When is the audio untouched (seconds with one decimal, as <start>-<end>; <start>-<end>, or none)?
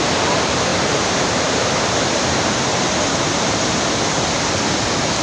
0.0-0.7; 3.8-5.2